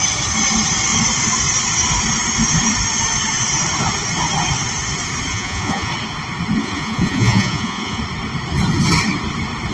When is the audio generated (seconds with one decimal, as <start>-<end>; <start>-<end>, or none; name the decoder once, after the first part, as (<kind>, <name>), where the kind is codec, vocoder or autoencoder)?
5.3-5.9 (vocoder, Vocos); 6.6-8.0